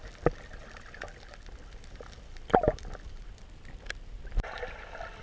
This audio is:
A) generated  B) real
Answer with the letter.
B